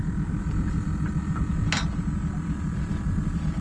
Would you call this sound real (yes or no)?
yes